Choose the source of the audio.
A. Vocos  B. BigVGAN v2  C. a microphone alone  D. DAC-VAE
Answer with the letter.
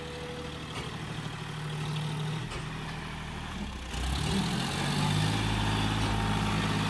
C